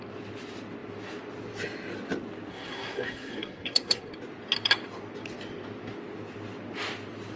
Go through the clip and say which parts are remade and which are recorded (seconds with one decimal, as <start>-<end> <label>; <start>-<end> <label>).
0.0-2.5 recorded; 2.5-4.1 remade; 4.1-7.4 recorded